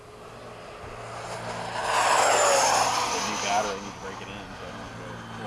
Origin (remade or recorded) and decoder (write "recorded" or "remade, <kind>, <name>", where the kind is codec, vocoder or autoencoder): recorded